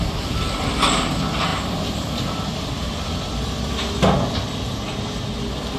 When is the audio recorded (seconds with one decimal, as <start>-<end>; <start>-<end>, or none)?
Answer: 0.0-1.5; 3.7-5.8